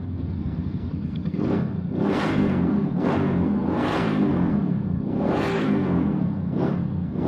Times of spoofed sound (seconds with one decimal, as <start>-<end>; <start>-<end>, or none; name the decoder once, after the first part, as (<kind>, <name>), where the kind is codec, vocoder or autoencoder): 0.0-7.3 (codec, SNAC)